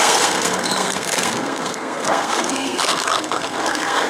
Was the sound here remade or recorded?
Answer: remade